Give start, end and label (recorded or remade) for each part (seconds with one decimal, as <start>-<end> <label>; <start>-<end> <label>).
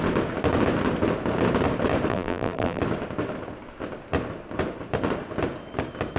0.0-2.1 recorded; 2.1-2.8 remade; 2.8-6.2 recorded